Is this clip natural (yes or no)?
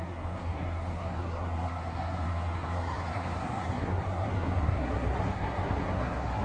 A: no